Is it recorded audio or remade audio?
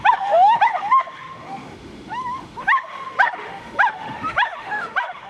remade